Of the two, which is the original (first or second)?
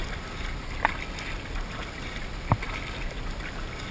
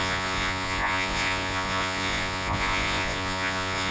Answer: first